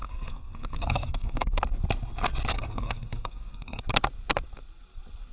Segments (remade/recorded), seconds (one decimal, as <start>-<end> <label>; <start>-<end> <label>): 0.0-1.6 remade; 1.6-2.5 recorded; 2.5-3.8 remade; 3.8-5.3 recorded